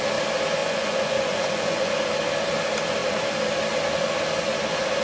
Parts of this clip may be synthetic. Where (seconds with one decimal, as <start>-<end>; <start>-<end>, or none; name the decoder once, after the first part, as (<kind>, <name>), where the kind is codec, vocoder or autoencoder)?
0.6-1.9 (vocoder, Vocos)